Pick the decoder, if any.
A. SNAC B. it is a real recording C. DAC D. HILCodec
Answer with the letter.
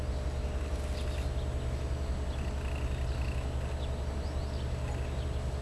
B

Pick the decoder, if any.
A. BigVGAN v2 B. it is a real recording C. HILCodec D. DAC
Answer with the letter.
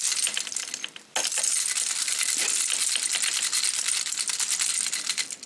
B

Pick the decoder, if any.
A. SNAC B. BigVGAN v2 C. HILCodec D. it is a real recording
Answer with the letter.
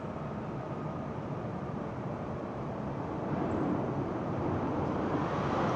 D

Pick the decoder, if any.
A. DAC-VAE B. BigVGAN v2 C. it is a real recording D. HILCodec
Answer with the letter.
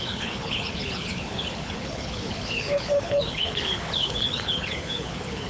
D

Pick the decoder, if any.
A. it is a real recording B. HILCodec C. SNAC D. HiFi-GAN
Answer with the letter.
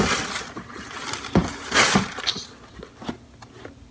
A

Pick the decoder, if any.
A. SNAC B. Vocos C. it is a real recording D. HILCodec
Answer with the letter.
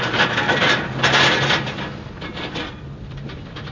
C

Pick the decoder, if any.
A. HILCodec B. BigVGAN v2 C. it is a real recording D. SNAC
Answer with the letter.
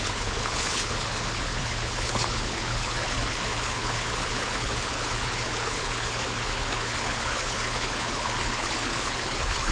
A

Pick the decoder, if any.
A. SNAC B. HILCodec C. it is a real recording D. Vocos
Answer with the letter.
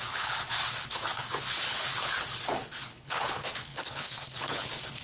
B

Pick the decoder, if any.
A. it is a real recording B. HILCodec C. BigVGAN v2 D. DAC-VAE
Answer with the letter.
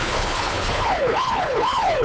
B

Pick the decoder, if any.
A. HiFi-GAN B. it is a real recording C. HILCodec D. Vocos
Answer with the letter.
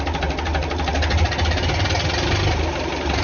B